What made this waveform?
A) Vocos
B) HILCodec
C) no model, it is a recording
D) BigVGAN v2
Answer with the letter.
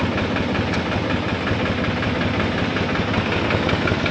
C